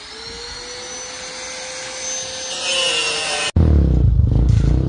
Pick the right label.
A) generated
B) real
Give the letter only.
B